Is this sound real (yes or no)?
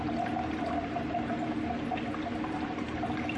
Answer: yes